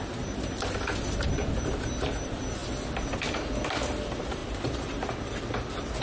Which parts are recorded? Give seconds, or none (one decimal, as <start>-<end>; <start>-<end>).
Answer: 0.0-6.0